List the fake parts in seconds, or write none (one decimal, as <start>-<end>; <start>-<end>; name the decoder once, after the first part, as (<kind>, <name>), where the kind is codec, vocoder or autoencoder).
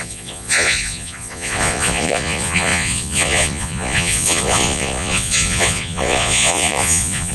0.0-7.3 (vocoder, Vocos)